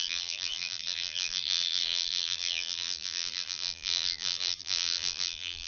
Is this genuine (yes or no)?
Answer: no